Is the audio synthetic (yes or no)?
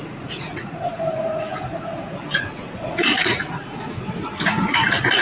yes